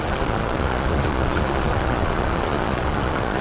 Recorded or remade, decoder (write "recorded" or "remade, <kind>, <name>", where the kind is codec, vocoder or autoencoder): remade, vocoder, Vocos